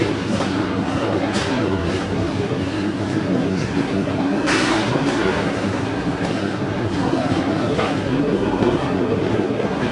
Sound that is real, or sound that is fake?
fake